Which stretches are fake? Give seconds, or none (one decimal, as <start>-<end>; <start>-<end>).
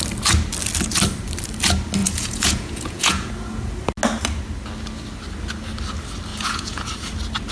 2.0-3.3; 6.3-6.9